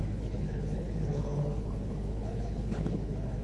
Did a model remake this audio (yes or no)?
yes